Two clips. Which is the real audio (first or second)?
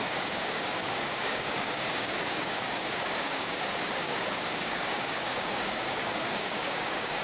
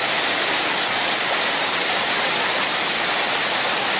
second